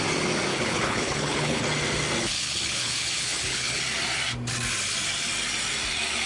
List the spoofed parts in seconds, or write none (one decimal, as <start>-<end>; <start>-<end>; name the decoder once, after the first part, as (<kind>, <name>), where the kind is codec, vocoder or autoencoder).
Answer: 0.5-1.6 (codec, HILCodec); 2.2-3.8